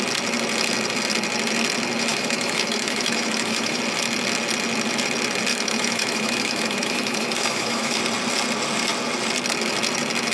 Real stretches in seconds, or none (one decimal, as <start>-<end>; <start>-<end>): 0.0-2.1; 3.8-5.5; 8.0-10.3